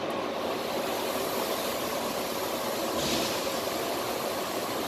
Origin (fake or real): real